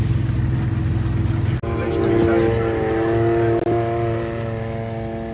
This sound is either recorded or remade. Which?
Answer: recorded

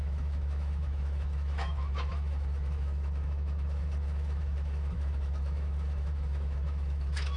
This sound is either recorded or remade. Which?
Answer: remade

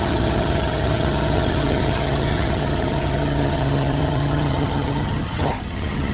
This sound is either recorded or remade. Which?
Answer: remade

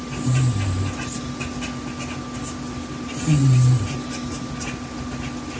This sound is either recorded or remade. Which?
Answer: recorded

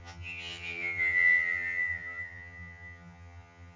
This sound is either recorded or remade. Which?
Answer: remade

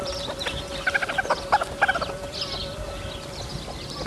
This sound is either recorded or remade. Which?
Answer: recorded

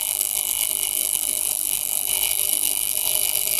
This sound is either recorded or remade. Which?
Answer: remade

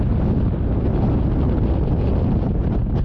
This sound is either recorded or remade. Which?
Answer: recorded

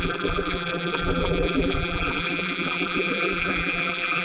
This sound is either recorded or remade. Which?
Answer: remade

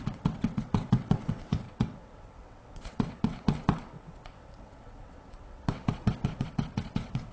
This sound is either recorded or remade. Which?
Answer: remade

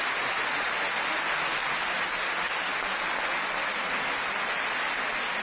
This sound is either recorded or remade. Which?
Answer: recorded